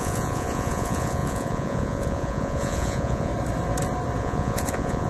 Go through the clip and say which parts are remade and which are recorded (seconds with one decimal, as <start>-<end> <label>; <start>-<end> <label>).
0.0-3.3 remade; 3.3-4.2 recorded; 4.2-5.1 remade